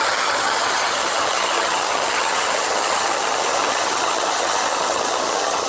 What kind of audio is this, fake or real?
fake